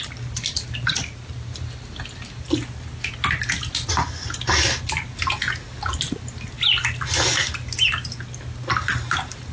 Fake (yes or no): no